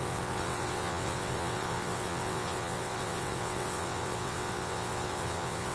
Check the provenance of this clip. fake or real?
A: fake